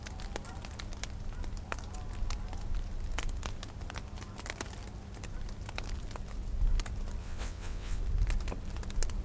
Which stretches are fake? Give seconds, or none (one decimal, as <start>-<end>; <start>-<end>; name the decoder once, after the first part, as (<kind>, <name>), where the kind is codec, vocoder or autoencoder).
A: 7.2-8.0 (vocoder, WaveNeXt)